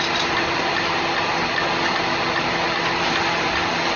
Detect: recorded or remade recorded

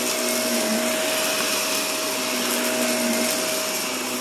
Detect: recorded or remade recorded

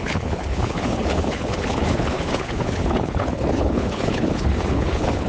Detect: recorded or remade remade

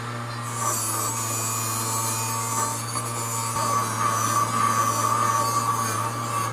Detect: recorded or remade recorded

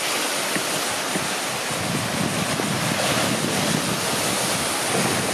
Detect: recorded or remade recorded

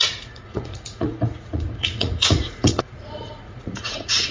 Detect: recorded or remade remade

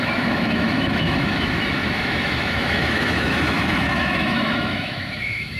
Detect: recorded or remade remade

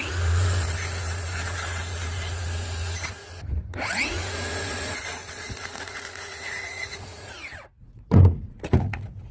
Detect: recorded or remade remade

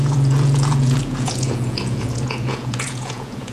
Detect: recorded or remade remade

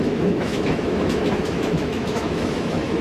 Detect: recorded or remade remade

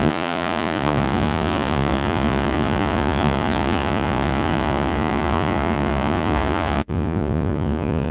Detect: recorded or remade remade